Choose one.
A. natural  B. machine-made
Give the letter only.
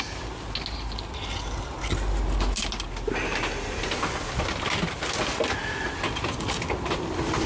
A